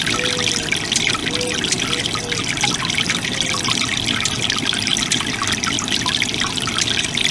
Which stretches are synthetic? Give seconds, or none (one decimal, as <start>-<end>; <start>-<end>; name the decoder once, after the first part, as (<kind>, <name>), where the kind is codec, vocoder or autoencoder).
none